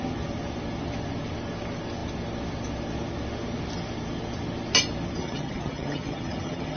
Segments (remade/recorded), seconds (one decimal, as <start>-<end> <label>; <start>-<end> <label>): 0.0-5.2 recorded; 5.2-6.8 remade